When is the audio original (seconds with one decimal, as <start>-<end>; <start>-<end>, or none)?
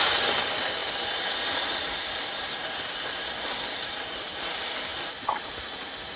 0.0-6.2